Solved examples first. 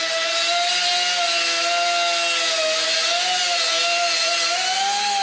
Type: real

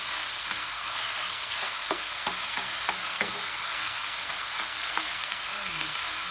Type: fake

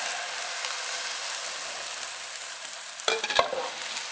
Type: real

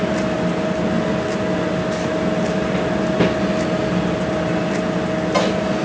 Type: real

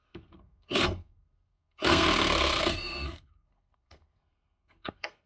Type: fake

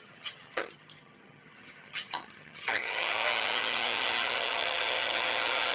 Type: fake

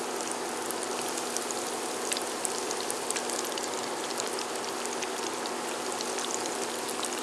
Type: real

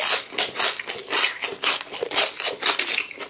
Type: real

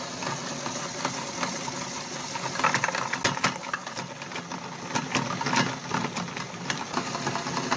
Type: real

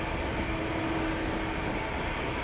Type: real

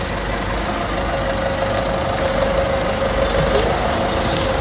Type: real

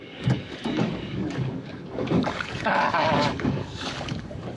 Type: fake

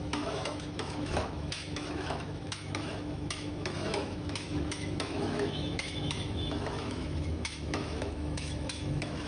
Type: fake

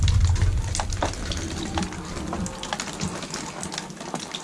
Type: real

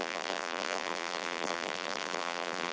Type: fake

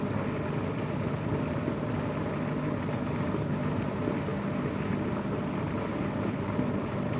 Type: real